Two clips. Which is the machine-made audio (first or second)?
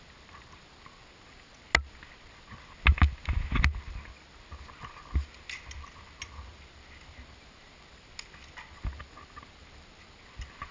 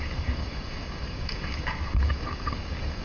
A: second